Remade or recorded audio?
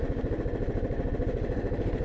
recorded